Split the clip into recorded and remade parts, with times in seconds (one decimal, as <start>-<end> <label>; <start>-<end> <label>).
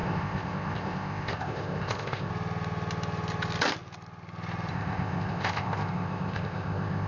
0.0-2.3 remade; 2.3-4.7 recorded; 4.7-7.1 remade